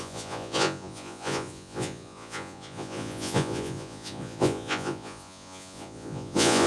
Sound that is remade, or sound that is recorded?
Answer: remade